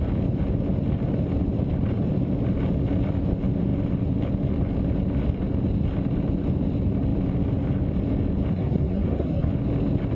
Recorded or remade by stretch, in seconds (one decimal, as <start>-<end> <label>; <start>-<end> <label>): 0.0-8.5 recorded; 8.5-9.5 remade; 9.5-10.2 recorded